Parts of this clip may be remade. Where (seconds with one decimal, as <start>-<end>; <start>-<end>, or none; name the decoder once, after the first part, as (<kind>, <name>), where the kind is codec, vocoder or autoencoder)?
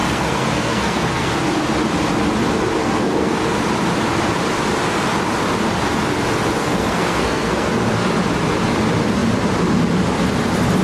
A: 0.0-1.4 (codec, SNAC); 2.8-3.4; 6.6-7.7